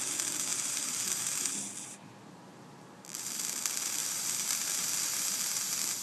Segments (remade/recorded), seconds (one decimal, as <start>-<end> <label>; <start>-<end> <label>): 0.0-0.5 recorded; 0.5-1.2 remade; 1.2-2.5 recorded; 2.5-3.4 remade; 3.4-4.0 recorded; 4.0-4.6 remade; 4.6-6.0 recorded